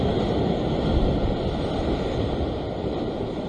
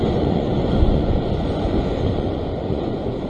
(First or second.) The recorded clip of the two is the first